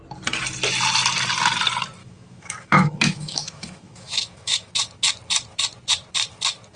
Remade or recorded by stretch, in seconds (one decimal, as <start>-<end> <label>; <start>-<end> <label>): 0.0-2.0 recorded; 2.0-4.7 remade; 4.7-6.8 recorded